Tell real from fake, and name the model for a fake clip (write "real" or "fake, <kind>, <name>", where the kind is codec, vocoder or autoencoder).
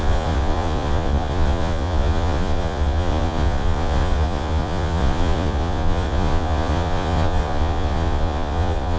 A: fake, vocoder, Vocos